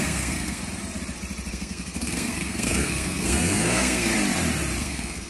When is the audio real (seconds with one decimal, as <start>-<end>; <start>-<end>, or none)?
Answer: 0.6-1.5; 4.1-4.8